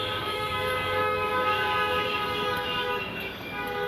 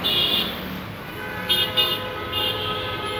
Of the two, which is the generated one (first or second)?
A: first